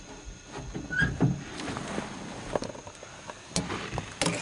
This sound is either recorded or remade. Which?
recorded